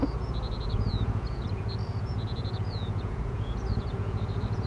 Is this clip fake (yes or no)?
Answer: yes